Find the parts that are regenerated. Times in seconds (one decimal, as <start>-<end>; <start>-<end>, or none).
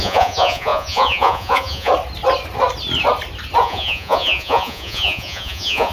0.0-1.9; 3.6-5.9